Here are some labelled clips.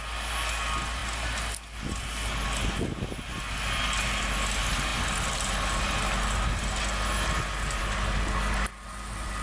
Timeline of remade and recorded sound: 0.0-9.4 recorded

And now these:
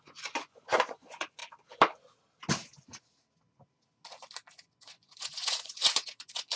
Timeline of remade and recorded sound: 0.0-1.4 remade; 1.4-4.5 recorded; 4.5-6.6 remade

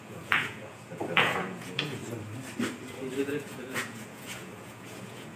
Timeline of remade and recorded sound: 0.0-2.0 remade; 2.0-3.2 recorded; 3.2-5.4 remade